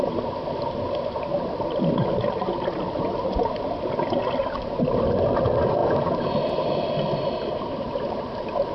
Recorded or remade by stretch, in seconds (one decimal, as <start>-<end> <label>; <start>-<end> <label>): 0.0-8.7 recorded